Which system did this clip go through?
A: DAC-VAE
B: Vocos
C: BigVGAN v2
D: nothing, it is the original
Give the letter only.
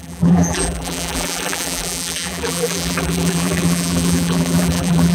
C